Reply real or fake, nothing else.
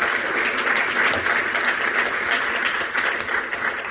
real